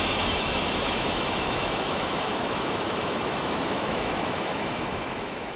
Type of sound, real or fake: fake